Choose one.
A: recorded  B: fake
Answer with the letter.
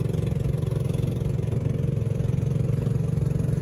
A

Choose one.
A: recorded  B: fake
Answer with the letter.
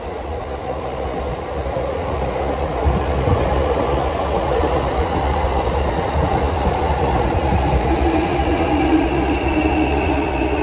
B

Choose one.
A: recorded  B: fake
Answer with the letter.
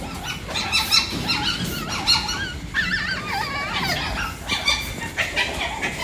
A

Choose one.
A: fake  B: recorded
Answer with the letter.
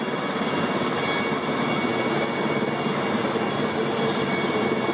B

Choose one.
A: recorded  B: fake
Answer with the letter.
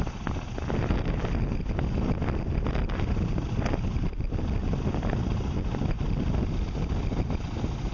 A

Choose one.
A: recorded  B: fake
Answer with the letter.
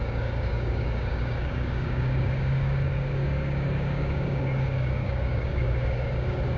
B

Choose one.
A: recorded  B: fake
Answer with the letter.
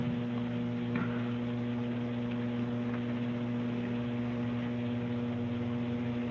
A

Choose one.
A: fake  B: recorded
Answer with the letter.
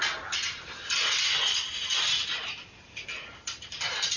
B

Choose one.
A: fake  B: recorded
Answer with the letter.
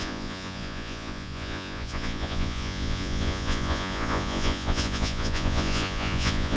A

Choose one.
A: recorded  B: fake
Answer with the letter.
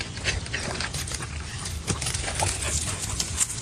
B